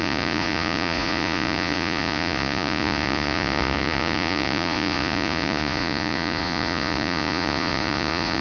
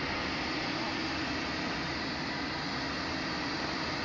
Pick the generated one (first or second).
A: first